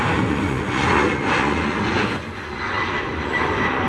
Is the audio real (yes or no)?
no